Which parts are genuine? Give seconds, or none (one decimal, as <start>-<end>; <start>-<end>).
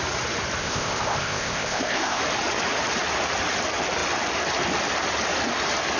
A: 0.0-0.6; 2.2-6.0